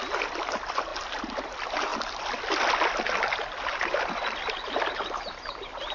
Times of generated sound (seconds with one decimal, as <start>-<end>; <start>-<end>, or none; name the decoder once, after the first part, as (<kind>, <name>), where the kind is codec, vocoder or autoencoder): none